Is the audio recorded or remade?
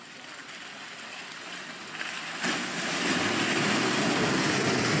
recorded